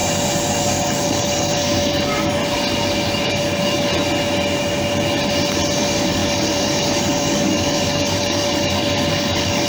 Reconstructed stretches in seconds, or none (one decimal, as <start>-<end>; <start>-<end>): 0.6-2.4; 3.1-3.9; 5.8-9.7